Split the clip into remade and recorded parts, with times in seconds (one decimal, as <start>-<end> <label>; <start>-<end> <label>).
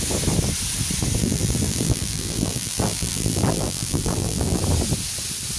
0.0-1.2 recorded; 1.2-4.6 remade; 4.6-5.6 recorded